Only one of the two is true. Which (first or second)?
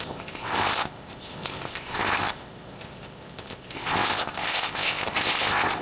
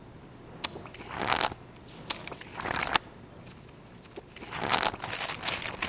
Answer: second